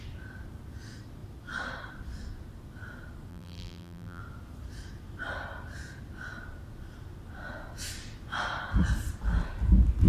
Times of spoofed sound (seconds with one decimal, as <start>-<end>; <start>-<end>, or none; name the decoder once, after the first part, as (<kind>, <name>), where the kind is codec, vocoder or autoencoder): 3.3-4.2 (vocoder, BigVGAN v2)